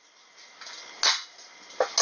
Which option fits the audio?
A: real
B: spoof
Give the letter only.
A